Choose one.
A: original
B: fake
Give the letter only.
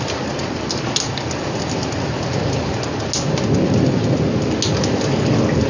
A